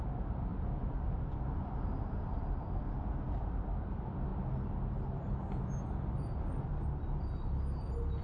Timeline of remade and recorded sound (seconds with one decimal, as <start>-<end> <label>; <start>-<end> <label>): 0.0-0.5 recorded; 0.5-2.8 remade; 2.8-8.2 recorded